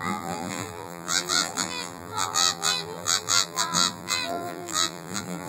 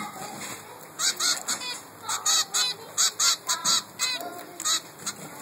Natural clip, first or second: second